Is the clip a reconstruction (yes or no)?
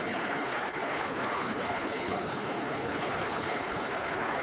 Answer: yes